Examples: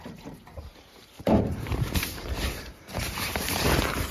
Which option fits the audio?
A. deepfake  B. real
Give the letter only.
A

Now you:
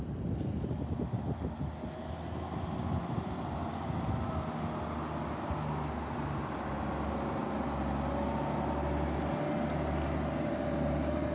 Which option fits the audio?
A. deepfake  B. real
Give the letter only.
B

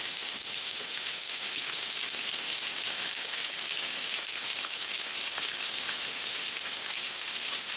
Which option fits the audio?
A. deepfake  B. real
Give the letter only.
A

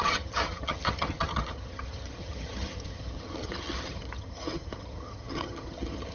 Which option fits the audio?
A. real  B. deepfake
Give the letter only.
B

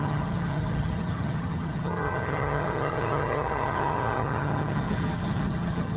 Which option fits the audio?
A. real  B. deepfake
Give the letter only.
B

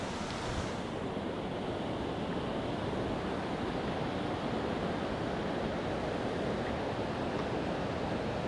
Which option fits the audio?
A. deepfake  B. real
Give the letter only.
B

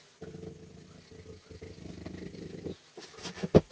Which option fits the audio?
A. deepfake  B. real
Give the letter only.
B